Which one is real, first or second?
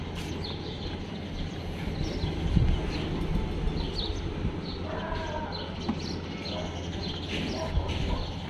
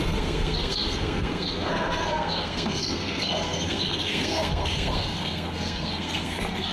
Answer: first